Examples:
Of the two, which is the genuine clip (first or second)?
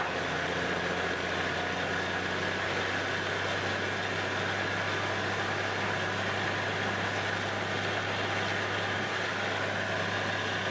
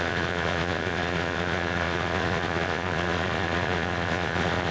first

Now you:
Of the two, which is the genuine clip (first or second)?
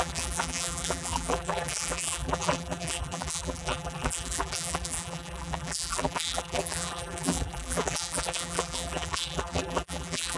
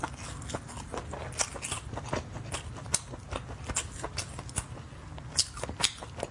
second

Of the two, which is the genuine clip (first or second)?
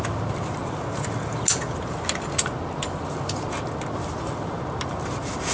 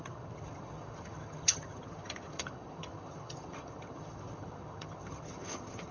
first